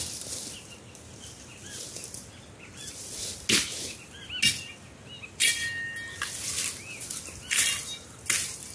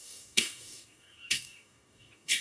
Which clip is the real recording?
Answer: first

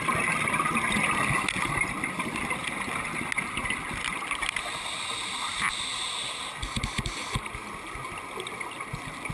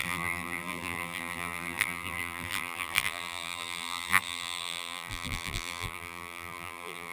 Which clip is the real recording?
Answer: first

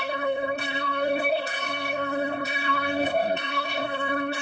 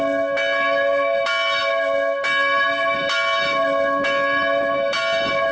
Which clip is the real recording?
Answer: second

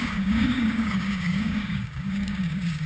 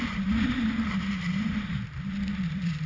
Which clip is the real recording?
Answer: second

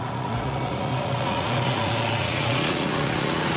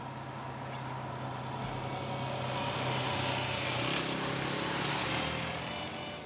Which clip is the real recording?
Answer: second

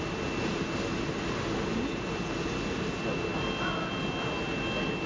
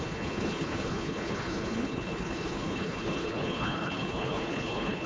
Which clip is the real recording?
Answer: first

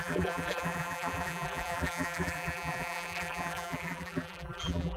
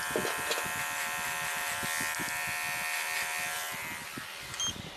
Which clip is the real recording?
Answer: second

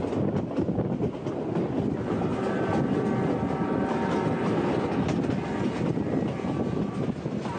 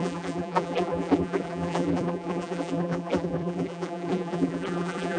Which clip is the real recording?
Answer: first